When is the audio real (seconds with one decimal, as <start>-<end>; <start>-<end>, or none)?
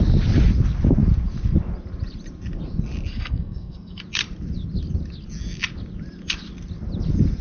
0.0-3.1; 4.0-7.4